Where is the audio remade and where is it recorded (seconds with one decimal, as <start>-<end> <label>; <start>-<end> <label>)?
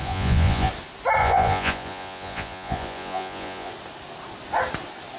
0.0-0.7 remade; 0.7-1.2 recorded; 1.2-3.7 remade; 3.7-5.2 recorded